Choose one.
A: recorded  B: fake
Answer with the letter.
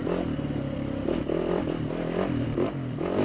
A